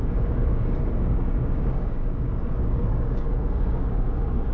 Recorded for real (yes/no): no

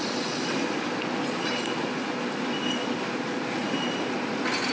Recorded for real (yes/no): yes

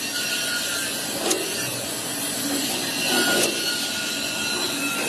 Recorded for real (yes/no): no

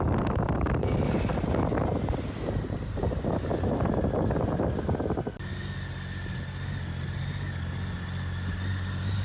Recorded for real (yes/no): yes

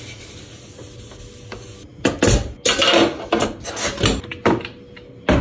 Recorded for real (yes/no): yes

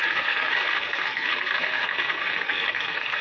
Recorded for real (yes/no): no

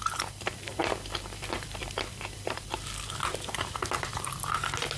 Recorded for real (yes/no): no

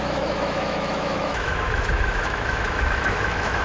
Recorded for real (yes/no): no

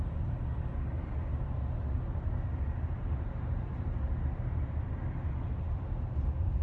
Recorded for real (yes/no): yes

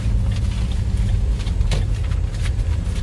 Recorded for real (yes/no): yes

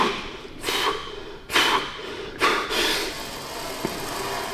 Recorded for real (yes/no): yes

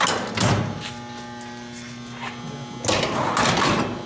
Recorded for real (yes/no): yes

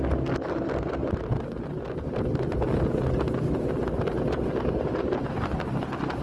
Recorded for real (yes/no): yes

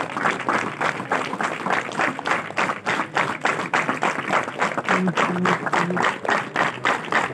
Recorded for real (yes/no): yes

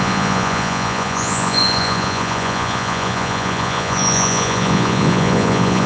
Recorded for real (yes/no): no